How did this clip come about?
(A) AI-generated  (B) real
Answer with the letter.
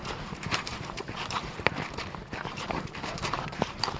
A